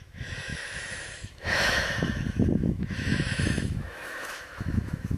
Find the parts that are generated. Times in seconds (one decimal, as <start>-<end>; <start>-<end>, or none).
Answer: 0.0-5.2